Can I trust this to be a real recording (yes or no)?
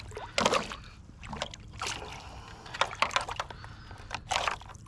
yes